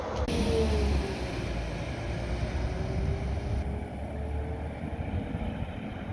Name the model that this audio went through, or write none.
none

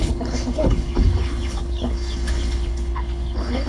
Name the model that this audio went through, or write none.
codec, HILCodec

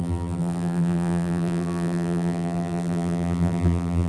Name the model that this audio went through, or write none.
vocoder, BigVGAN v2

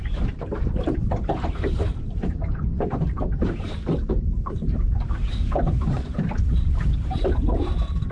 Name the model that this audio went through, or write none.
vocoder, BigVGAN v2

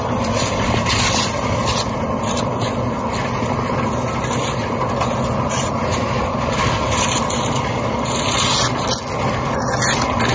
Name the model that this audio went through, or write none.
none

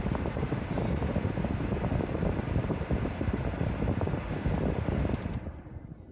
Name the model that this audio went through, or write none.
none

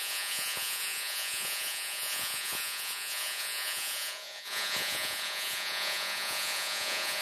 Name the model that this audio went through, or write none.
vocoder, Vocos